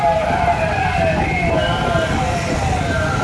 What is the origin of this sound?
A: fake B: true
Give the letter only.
B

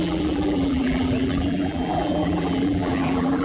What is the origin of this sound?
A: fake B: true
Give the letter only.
A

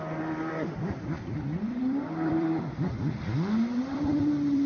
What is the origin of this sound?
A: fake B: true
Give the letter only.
A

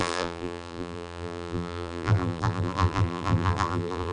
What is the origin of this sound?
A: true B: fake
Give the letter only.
B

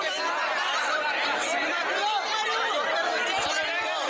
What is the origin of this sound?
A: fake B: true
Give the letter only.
B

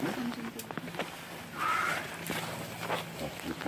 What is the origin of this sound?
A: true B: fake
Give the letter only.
A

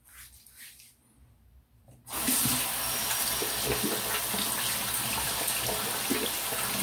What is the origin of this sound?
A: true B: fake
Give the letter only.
A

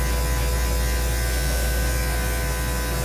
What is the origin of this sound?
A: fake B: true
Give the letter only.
B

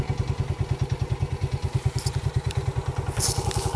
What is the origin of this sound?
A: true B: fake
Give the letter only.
A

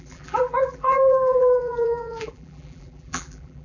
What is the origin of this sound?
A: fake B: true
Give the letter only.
A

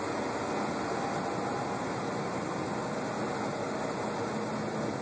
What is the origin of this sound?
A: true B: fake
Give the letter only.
A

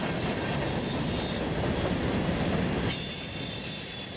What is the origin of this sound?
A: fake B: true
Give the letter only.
B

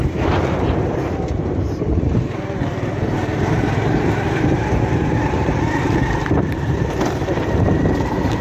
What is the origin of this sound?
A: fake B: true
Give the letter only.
A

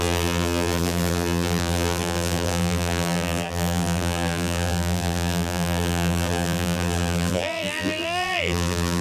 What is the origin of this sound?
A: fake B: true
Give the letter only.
A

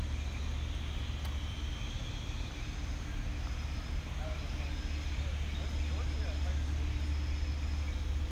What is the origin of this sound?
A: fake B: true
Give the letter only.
B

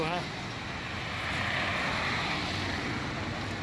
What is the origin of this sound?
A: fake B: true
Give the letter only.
B